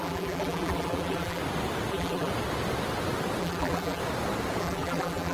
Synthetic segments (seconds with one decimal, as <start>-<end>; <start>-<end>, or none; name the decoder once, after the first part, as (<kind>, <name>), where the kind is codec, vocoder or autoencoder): 0.0-1.4 (vocoder, BigVGAN v2); 1.9-2.3; 3.4-4.0; 4.6-5.3